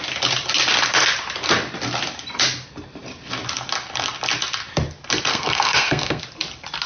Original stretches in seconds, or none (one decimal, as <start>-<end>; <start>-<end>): 0.0-5.3; 6.2-6.9